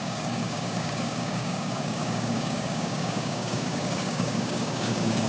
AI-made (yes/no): yes